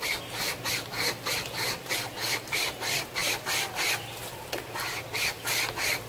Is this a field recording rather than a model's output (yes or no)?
yes